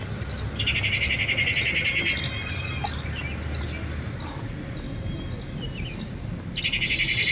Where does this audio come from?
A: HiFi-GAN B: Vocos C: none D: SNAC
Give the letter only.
C